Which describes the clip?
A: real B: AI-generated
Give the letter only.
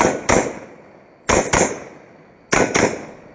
A